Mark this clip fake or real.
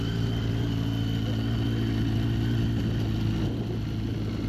real